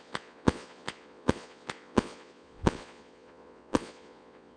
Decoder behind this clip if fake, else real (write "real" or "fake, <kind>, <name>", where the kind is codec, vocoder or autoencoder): fake, vocoder, Vocos